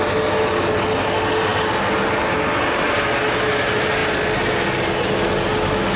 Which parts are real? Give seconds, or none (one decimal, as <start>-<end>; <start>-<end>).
0.0-6.0